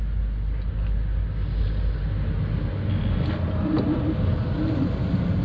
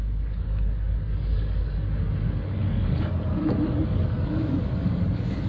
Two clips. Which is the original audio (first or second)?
first